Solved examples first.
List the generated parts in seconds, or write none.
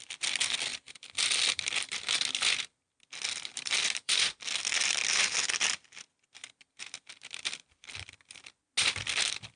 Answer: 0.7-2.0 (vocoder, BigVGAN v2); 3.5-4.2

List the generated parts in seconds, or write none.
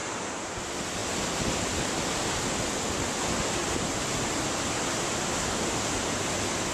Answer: 0.0-0.6 (vocoder, BigVGAN v2); 3.6-4.4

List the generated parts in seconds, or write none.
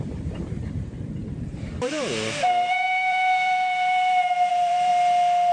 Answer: 0.0-4.9 (vocoder, BigVGAN v2)